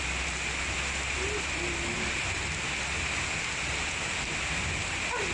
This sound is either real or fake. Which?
real